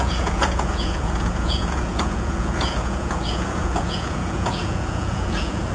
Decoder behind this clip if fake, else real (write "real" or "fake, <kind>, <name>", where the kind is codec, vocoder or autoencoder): fake, vocoder, Vocos